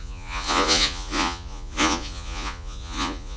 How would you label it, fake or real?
fake